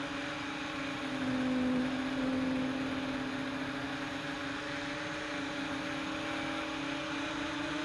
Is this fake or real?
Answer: real